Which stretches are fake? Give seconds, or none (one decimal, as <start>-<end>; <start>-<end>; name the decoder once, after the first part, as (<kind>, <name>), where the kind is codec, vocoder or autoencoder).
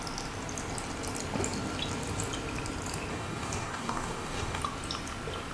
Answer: 3.1-4.6 (codec, DAC)